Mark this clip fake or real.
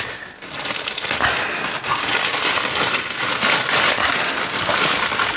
real